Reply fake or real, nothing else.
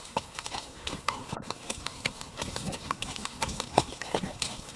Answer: fake